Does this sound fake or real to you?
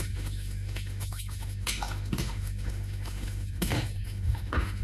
fake